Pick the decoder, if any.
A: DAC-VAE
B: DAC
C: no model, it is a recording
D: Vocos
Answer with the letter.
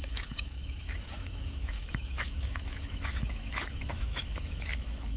A